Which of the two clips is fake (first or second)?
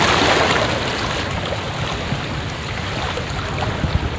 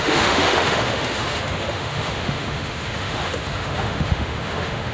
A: second